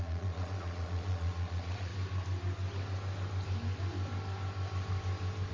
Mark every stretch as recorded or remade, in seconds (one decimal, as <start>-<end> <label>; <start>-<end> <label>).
0.0-1.9 remade; 1.9-5.5 recorded